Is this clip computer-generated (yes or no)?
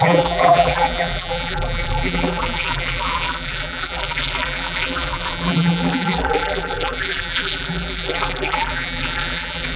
yes